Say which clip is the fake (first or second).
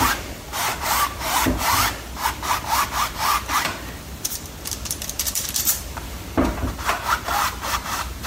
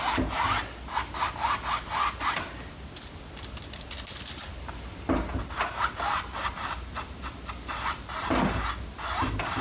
first